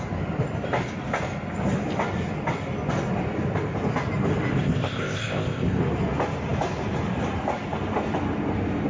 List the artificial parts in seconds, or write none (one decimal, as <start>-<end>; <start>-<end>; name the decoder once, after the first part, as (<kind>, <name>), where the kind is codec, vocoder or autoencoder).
4.6-5.8 (codec, ZipCodec)